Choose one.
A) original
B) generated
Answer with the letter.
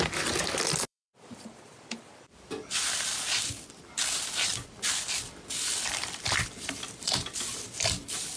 B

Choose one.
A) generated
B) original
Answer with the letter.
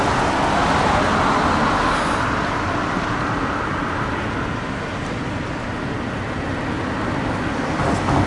B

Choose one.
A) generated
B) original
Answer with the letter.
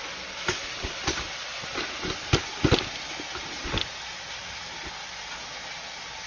B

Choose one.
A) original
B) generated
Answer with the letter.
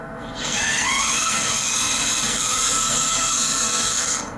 B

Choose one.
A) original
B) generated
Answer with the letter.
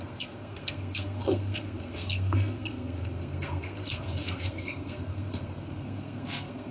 B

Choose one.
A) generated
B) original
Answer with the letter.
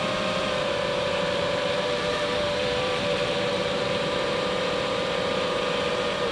A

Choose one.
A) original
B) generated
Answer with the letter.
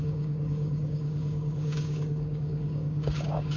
B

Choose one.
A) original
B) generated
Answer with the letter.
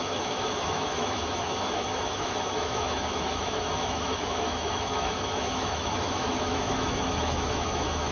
B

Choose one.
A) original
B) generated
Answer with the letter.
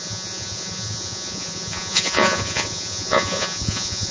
B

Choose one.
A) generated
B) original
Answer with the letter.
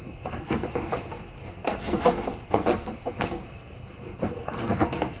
A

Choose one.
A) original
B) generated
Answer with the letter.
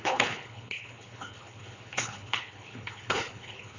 B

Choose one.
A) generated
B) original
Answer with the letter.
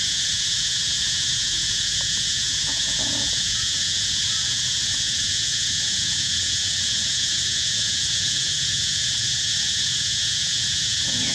A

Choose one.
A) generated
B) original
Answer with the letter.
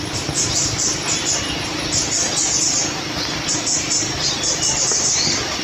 B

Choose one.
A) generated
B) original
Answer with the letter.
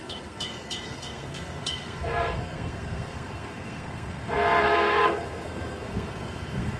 A